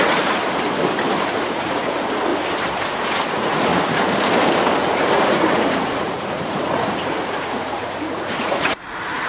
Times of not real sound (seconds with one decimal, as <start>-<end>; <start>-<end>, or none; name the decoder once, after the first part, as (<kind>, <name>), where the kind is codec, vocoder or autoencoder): 0.0-0.4 (vocoder, Vocos); 1.2-2.3; 3.3-3.7; 4.8-9.3

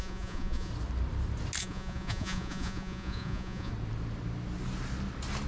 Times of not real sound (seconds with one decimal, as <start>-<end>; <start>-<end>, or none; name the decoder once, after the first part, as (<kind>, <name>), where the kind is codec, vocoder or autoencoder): 0.0-0.7 (vocoder, Vocos); 1.6-3.7